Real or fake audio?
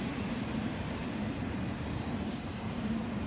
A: fake